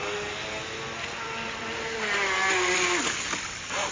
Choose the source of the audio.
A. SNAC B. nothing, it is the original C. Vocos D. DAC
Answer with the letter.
B